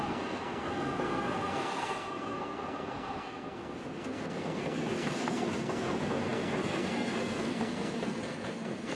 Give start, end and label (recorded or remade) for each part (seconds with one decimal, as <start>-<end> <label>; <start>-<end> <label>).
0.0-9.0 remade